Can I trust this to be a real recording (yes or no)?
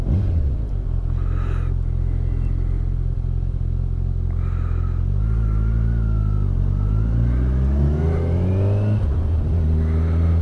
yes